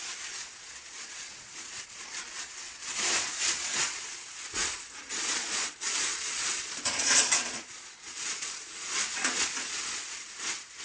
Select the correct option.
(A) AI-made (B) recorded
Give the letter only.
A